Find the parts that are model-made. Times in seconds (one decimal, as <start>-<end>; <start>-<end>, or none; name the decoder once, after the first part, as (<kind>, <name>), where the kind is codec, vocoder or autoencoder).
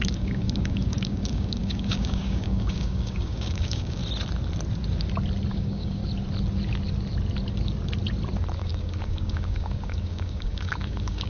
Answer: 0.0-4.0 (codec, DAC); 5.5-6.0; 8.6-11.3